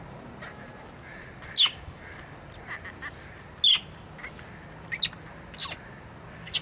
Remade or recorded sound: recorded